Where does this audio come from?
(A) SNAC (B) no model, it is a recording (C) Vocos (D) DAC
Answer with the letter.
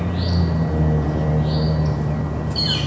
B